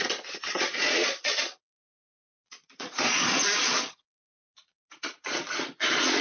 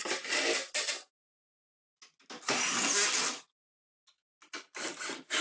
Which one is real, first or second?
second